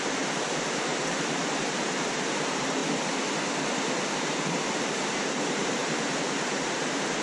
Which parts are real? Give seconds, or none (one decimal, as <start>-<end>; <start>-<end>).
0.9-1.8; 2.8-5.1